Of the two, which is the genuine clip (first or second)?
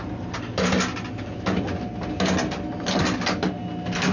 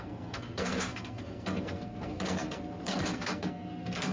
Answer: first